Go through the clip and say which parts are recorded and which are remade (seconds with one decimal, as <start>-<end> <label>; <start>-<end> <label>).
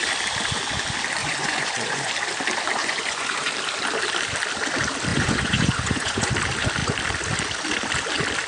0.0-1.2 recorded; 1.2-2.1 remade; 2.1-2.8 recorded; 2.8-3.5 remade; 3.5-5.1 recorded; 5.1-6.3 remade; 6.3-8.5 recorded